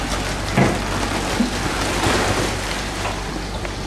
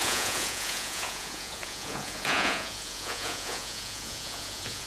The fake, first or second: second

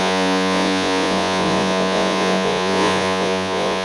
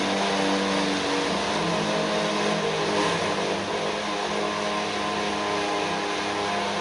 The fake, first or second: first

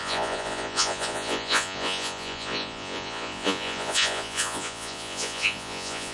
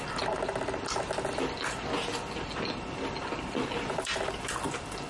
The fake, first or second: first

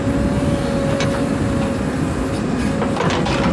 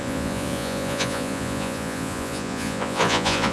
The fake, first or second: second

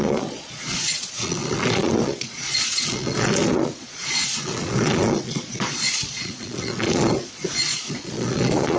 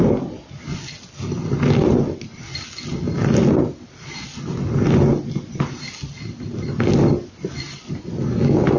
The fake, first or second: first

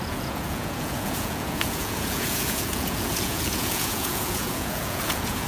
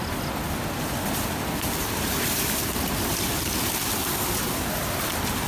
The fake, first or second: first